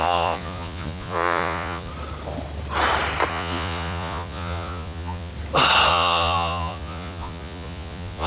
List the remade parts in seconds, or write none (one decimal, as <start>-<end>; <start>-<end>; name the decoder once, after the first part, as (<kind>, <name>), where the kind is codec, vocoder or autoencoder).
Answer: 0.0-1.9 (vocoder, Vocos); 3.3-5.3; 5.9-8.3